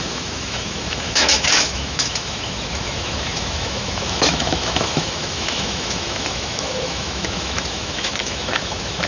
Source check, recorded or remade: remade